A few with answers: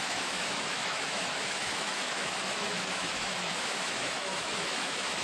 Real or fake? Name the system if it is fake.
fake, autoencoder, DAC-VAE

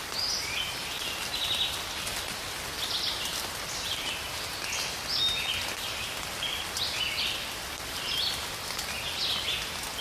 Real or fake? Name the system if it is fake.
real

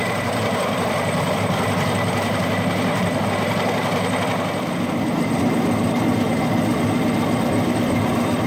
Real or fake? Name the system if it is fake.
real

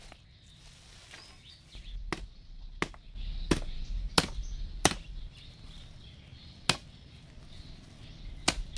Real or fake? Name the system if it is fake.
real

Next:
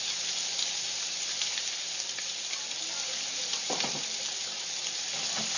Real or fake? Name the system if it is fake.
real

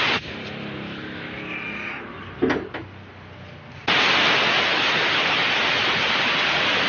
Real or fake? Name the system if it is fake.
real